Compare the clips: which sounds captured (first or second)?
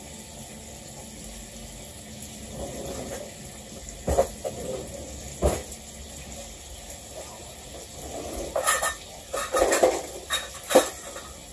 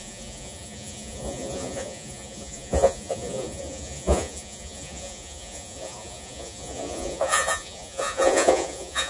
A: first